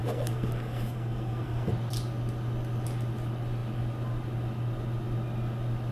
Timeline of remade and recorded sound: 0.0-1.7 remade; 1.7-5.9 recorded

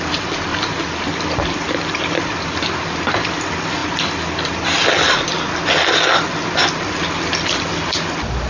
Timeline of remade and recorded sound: 0.0-8.5 recorded

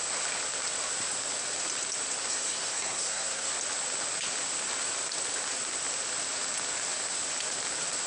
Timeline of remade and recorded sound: 0.0-2.2 recorded; 2.2-3.5 remade; 3.5-8.1 recorded